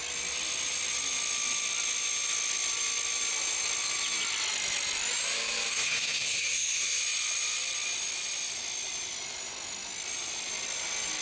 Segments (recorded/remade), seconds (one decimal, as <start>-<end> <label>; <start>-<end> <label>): 0.0-5.7 recorded; 5.7-7.0 remade; 7.0-11.2 recorded